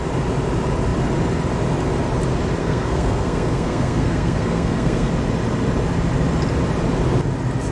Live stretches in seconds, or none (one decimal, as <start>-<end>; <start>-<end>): 0.0-2.6; 5.1-7.7